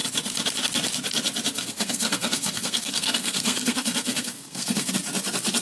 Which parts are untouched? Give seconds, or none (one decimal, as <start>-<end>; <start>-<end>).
0.0-1.6; 4.9-5.6